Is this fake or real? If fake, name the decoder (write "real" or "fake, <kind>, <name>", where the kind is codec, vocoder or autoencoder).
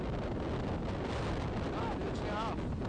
real